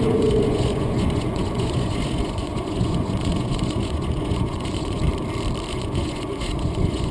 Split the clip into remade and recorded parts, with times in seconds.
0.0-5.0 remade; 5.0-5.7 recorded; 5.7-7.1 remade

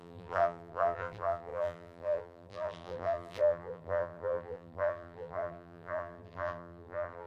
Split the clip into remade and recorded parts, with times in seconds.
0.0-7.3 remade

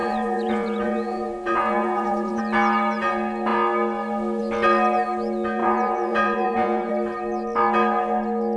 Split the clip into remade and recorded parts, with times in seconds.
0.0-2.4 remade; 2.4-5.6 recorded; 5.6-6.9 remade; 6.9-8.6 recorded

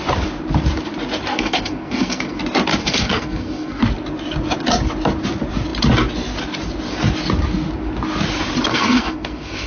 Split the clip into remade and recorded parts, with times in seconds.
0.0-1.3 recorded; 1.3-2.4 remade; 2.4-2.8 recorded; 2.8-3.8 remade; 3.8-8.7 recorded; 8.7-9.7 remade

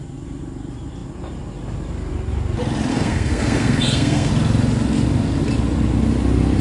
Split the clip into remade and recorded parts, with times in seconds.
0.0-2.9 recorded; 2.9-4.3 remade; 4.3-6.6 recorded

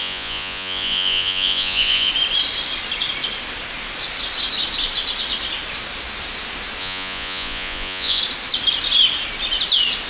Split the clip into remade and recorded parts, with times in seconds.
0.0-2.1 remade; 2.1-6.8 recorded; 6.8-8.2 remade; 8.2-10.1 recorded